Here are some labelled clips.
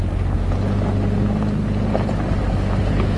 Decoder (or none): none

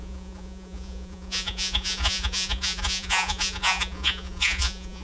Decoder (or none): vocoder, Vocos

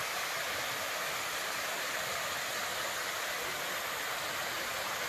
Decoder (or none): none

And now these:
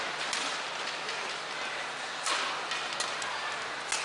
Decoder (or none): none